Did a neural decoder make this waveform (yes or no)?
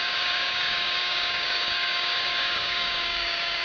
yes